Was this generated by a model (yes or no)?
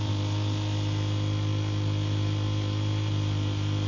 no